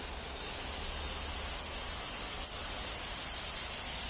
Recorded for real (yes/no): yes